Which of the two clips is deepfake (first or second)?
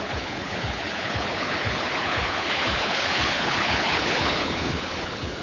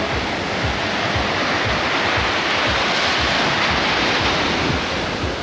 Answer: first